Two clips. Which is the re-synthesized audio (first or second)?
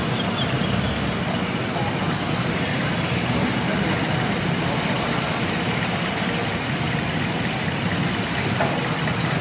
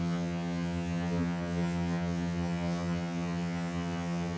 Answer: second